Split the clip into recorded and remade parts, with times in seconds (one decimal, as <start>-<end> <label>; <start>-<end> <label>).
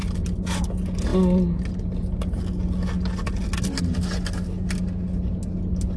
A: 0.0-6.0 recorded